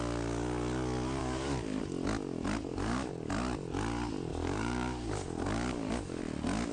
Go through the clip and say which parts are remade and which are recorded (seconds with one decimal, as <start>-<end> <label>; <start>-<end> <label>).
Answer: 0.0-1.2 recorded; 1.2-1.8 remade; 1.8-2.7 recorded; 2.7-3.3 remade; 3.3-4.3 recorded; 4.3-6.2 remade; 6.2-6.7 recorded

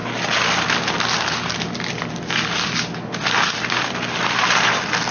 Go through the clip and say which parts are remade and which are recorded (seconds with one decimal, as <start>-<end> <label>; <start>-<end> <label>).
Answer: 0.0-5.1 recorded

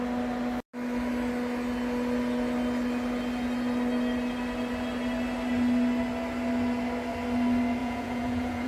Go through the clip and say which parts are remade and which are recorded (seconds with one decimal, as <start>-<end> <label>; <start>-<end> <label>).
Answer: 0.0-7.8 recorded; 7.8-8.7 remade

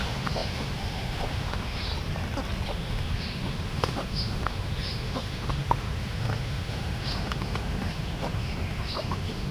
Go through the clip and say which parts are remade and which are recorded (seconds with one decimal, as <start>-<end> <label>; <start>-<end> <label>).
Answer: 0.0-1.9 remade; 1.9-2.7 recorded; 2.7-9.5 remade

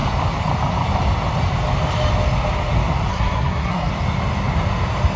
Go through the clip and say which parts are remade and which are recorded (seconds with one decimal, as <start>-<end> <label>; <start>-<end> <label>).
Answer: 0.0-3.1 recorded; 3.1-3.9 remade; 3.9-5.2 recorded

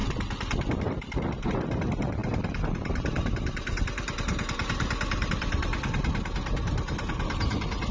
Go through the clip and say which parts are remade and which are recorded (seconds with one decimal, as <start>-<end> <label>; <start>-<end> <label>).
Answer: 0.0-2.2 recorded; 2.2-5.3 remade; 5.3-7.9 recorded

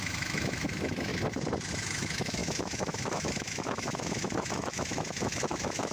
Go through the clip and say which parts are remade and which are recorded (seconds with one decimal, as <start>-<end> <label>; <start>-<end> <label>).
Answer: 0.0-1.1 remade; 1.1-1.7 recorded; 1.7-5.9 remade